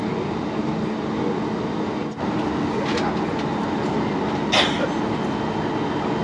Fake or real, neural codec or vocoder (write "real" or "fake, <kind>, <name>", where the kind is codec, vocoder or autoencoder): real